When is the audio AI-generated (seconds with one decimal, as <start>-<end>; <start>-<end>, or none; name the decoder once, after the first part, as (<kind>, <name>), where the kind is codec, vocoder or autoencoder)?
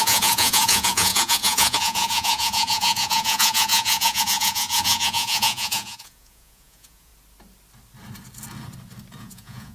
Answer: 0.0-7.1 (vocoder, Vocos); 9.2-9.7